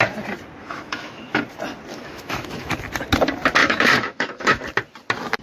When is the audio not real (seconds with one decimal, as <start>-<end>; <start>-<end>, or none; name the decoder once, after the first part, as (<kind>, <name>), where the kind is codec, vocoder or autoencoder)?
0.6-1.4 (autoencoder, DAC-VAE); 1.9-2.7; 3.6-4.6